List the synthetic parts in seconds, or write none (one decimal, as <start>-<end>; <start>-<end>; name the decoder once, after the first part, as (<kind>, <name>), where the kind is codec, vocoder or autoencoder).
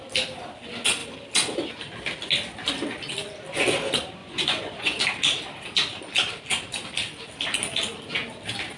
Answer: 4.2-5.0 (vocoder, Vocos)